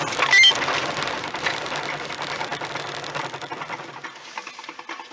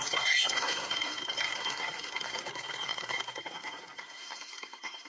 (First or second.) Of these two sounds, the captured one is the first